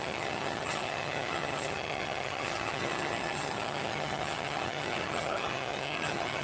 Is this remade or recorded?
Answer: remade